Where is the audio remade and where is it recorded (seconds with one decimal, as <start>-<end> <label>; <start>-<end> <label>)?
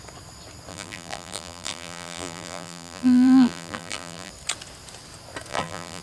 0.0-0.7 recorded; 0.7-4.3 remade; 4.3-5.5 recorded; 5.5-6.0 remade